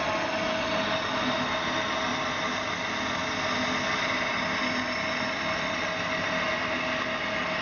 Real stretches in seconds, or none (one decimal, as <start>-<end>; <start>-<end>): 0.0-7.6